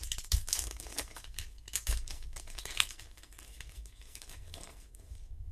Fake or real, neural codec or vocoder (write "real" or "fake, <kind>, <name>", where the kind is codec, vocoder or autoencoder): fake, codec, SNAC